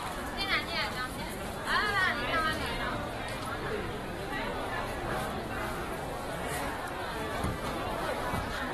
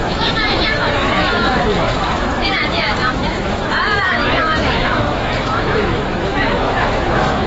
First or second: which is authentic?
first